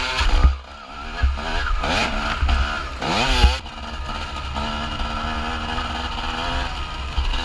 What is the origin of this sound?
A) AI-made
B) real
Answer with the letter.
B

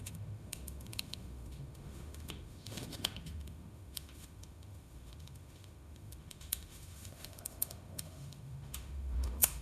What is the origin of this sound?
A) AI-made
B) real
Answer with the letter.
A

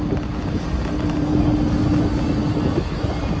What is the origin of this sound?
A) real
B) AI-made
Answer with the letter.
A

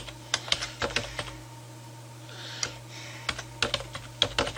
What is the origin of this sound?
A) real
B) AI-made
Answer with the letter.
A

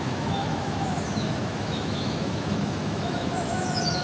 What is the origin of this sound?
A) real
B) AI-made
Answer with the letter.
B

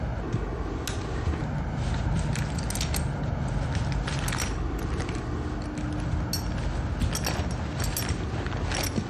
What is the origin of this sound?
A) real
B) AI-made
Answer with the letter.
A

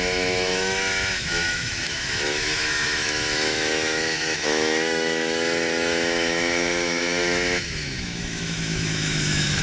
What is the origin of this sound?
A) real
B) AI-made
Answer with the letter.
B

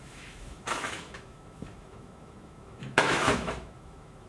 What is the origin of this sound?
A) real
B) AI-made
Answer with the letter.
B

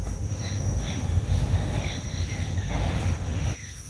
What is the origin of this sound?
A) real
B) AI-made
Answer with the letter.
B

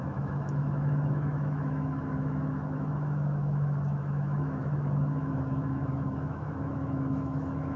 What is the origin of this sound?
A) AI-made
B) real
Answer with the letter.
A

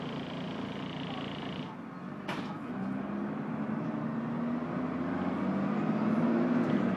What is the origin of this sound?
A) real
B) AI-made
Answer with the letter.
A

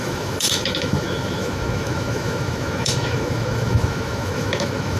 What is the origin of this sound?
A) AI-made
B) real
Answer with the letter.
A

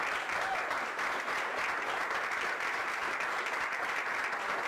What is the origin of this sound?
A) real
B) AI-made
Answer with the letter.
A